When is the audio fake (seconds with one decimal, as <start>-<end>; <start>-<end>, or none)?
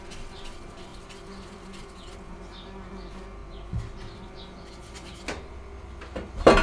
0.9-2.5; 3.4-4.3